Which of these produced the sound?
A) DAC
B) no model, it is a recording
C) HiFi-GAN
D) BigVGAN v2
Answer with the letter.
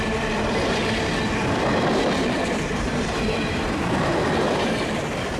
D